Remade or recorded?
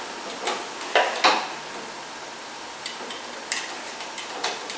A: recorded